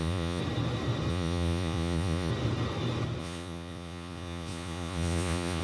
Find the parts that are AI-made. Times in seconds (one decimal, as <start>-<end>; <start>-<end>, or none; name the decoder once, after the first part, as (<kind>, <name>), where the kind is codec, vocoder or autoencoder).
0.0-0.4 (vocoder, Vocos); 1.1-2.3; 3.2-5.6